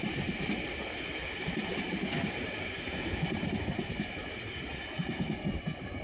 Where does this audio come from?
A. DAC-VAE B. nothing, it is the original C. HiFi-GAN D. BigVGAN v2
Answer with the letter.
B